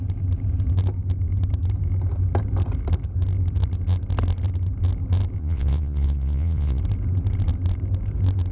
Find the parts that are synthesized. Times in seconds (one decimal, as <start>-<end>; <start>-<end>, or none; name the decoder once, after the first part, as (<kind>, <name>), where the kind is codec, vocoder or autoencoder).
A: 5.4-6.8 (vocoder, Vocos)